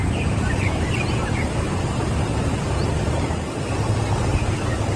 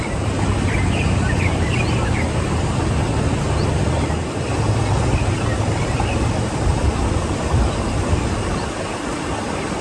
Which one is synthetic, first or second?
first